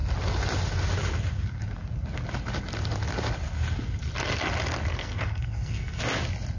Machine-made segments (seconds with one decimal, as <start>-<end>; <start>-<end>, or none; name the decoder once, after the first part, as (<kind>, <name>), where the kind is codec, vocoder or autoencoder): 4.9-6.0 (codec, SNAC)